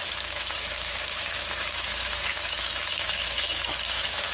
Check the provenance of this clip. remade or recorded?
remade